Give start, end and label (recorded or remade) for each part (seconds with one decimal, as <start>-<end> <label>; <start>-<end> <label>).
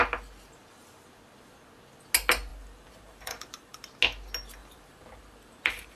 0.0-2.5 recorded; 2.5-3.8 remade; 3.8-4.6 recorded; 4.6-6.0 remade